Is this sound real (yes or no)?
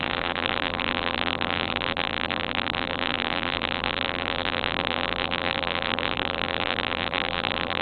no